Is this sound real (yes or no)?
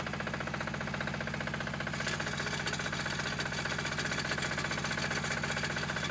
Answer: yes